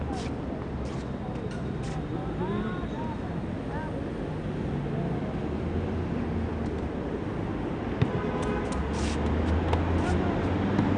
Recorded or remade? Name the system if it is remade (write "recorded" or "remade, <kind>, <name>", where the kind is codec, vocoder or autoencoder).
recorded